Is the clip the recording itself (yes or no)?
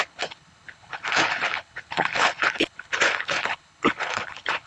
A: no